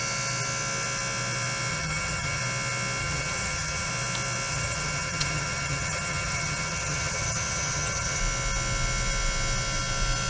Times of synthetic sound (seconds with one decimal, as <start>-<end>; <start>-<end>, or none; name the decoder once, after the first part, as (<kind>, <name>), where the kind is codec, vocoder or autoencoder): 1.7-2.4 (vocoder, HiFi-GAN); 3.0-3.9; 4.5-8.2